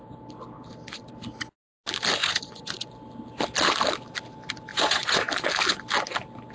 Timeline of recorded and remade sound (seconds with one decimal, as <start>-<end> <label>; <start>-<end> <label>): 0.0-2.2 recorded; 2.2-2.9 remade; 2.9-4.7 recorded; 4.7-5.2 remade; 5.2-6.5 recorded